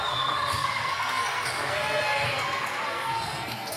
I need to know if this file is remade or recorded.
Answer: remade